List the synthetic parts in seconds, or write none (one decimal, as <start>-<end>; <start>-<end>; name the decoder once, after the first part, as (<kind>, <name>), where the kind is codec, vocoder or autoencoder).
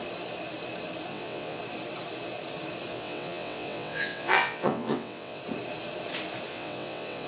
1.1-1.6 (vocoder, WaveNeXt); 2.9-5.4; 6.5-7.3